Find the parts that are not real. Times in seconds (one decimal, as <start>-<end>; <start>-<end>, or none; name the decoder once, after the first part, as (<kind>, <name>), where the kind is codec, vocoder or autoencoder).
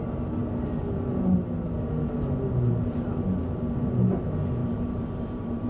4.6-5.7 (vocoder, BigVGAN v2)